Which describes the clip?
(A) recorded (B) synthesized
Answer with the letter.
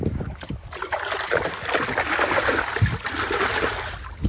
A